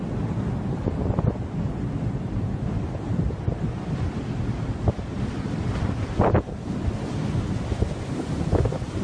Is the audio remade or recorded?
recorded